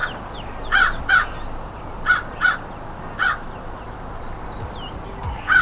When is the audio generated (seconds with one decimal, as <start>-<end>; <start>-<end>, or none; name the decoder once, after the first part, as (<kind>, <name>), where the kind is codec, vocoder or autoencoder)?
none